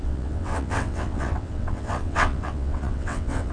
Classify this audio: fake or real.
fake